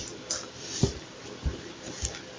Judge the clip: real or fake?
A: real